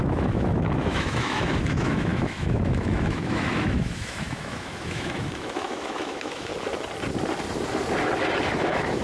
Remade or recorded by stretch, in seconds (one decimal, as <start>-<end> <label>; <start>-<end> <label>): 0.0-6.5 remade; 6.5-8.6 recorded; 8.6-9.0 remade